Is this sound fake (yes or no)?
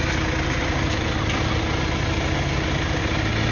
no